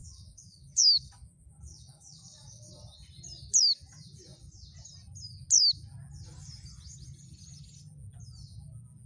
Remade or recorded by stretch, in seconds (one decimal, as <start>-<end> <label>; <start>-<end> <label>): 0.0-2.7 remade; 2.7-9.1 recorded